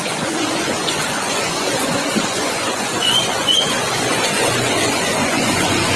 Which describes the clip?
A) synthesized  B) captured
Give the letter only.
A